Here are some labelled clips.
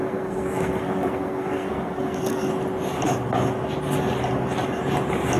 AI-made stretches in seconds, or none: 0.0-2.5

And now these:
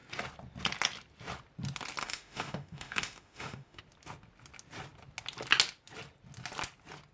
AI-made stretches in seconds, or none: 2.0-3.8

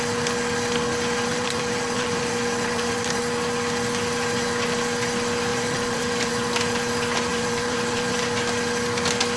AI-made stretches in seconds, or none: 1.3-3.2; 5.5-6.3; 7.3-8.2

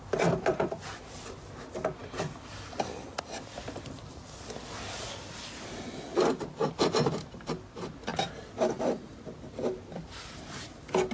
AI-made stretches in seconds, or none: 6.1-6.7

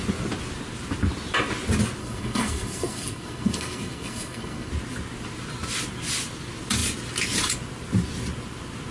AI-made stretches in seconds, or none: 2.0-4.7

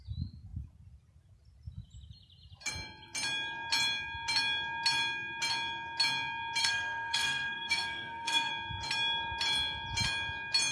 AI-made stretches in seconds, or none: 6.6-8.5